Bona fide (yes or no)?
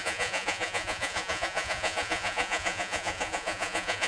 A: no